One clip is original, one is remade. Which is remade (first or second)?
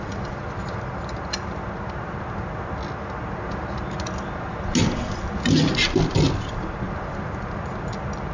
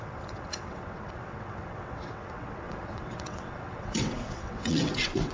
second